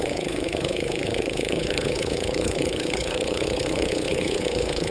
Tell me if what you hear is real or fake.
fake